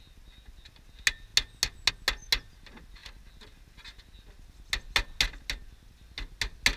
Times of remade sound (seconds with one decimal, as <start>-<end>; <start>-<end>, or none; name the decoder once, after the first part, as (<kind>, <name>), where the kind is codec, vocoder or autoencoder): none